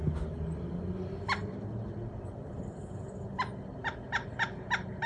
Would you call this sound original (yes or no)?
yes